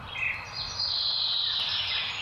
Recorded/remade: recorded